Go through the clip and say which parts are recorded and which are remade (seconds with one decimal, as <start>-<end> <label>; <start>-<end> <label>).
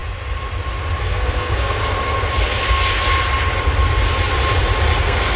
0.0-1.0 recorded; 1.0-1.8 remade; 1.8-5.0 recorded; 5.0-5.4 remade